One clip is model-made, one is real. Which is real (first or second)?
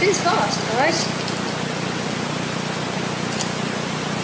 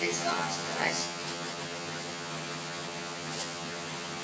first